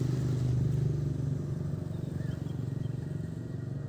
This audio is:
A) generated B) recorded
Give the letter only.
B